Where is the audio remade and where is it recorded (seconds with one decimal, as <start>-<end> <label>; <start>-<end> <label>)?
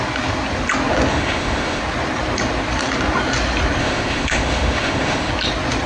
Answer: 0.0-1.1 recorded; 1.1-1.8 remade; 1.8-3.8 recorded; 3.8-5.3 remade; 5.3-5.9 recorded